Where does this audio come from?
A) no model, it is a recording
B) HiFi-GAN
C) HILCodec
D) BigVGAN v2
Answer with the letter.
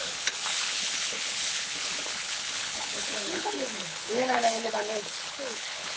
C